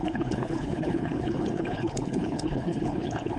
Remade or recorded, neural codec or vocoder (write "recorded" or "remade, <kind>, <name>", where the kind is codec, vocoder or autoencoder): remade, codec, HILCodec